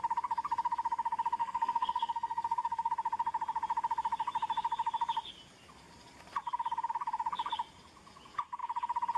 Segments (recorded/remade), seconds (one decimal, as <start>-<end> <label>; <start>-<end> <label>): 0.0-1.4 recorded; 1.4-2.9 remade; 2.9-9.2 recorded